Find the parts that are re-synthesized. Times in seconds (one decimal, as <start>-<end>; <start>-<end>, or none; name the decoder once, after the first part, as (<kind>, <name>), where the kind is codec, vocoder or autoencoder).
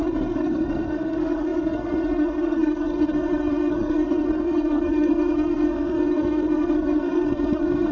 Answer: 0.0-7.9 (codec, SNAC)